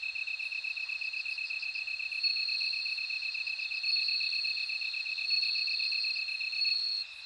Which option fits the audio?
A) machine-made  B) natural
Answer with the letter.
B